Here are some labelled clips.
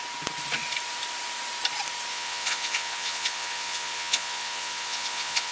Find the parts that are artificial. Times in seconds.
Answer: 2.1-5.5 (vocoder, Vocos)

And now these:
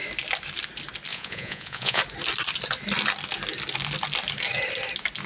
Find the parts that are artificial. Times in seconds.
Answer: 1.1-2.0 (vocoder, Vocos)

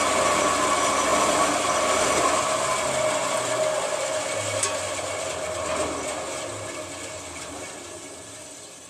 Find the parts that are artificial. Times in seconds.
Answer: none

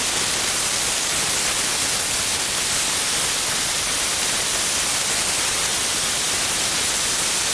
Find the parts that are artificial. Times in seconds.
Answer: none

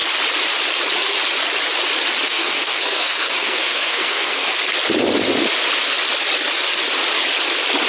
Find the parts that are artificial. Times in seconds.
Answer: 2.3-4.5 (codec, SNAC)

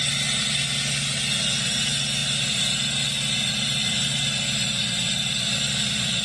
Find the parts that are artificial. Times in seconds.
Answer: none